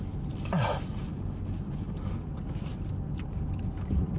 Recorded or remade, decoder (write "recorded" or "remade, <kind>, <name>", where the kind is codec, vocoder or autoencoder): recorded